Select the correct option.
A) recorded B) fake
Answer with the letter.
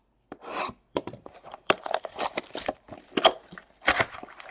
B